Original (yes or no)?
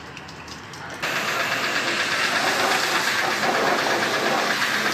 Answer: yes